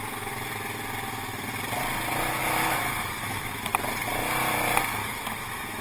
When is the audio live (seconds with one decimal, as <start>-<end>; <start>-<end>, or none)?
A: 0.0-2.4; 3.6-5.0